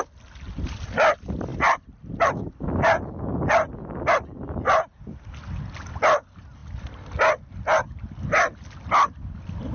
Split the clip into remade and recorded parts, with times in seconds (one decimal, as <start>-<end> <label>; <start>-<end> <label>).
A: 0.0-9.7 recorded

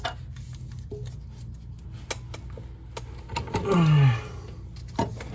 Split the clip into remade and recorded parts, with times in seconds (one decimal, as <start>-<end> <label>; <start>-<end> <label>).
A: 0.0-5.3 recorded

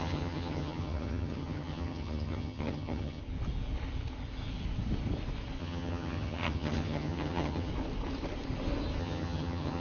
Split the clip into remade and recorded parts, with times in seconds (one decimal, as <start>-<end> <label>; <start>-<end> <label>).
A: 0.0-3.2 remade; 3.2-5.6 recorded; 5.6-7.7 remade; 7.7-9.0 recorded; 9.0-9.8 remade

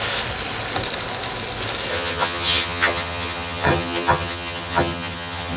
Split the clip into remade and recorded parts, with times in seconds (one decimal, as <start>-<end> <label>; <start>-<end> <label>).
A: 0.0-1.9 recorded; 1.9-5.6 remade

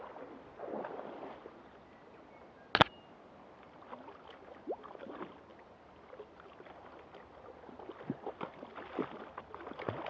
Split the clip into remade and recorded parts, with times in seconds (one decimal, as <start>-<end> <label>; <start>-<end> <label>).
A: 0.0-10.1 recorded

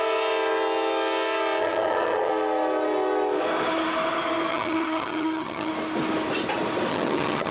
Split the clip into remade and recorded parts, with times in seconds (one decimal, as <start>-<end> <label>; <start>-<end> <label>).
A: 0.0-1.6 recorded; 1.6-2.3 remade; 2.3-4.5 recorded; 4.5-5.7 remade; 5.7-6.9 recorded; 6.9-7.5 remade

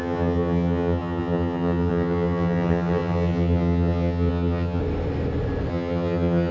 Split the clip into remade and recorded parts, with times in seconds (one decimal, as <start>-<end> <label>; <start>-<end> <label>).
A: 0.0-4.8 remade; 4.8-5.7 recorded; 5.7-6.5 remade